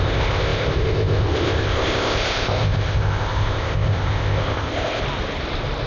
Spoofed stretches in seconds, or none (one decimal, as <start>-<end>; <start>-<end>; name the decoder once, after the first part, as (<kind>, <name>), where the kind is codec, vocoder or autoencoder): 0.0-5.0 (codec, ZipCodec)